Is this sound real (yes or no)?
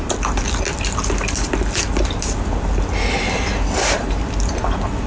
yes